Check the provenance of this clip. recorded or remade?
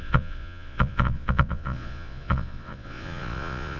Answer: remade